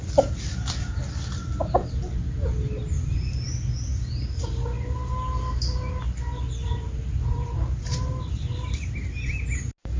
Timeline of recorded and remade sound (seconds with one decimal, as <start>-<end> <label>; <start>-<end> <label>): 0.0-10.0 recorded